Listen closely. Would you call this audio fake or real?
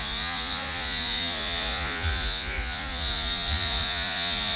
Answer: fake